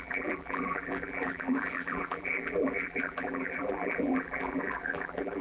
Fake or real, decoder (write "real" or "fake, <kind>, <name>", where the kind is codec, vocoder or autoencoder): fake, vocoder, BigVGAN v2